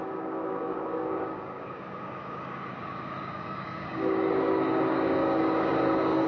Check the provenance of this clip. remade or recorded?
remade